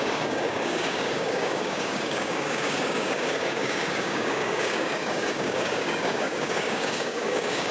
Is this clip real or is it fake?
fake